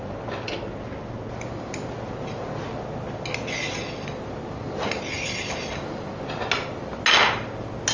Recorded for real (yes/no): yes